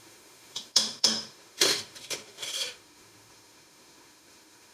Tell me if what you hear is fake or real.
fake